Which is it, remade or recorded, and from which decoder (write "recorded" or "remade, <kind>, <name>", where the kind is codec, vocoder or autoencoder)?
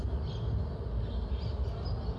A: recorded